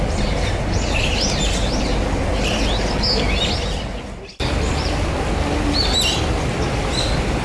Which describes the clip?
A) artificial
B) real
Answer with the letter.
B